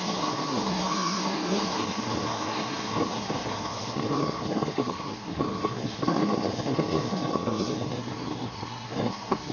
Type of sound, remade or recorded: remade